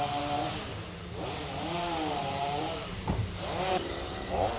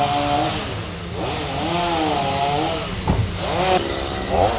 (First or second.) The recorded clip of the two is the second